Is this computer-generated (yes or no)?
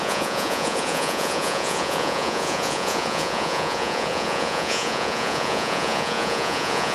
yes